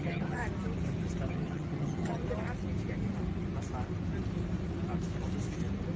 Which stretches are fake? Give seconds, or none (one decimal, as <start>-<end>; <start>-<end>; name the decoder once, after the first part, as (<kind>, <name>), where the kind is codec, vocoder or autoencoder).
0.0-0.4 (vocoder, HiFi-GAN); 1.3-2.2